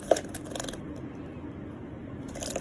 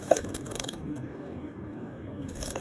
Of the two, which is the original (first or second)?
first